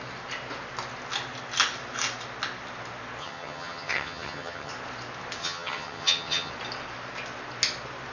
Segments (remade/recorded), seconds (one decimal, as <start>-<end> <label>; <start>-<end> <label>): 0.0-3.2 recorded; 3.2-4.7 remade; 4.7-5.4 recorded; 5.4-6.5 remade; 6.5-8.1 recorded